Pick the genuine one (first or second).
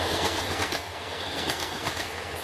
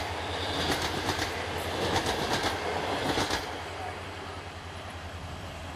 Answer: second